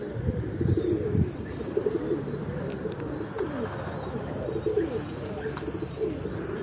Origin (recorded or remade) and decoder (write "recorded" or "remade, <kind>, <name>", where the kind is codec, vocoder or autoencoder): recorded